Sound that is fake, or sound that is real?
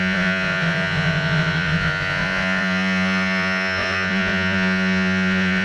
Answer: fake